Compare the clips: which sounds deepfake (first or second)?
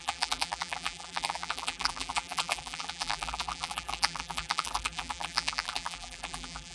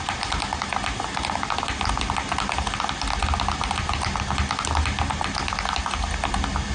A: first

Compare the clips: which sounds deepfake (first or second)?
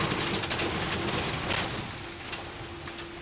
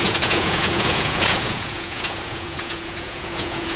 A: second